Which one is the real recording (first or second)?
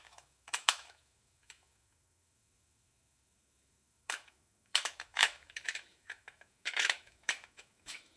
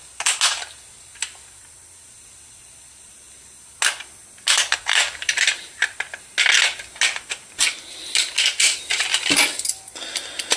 second